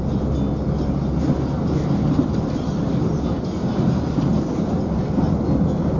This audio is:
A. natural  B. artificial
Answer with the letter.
A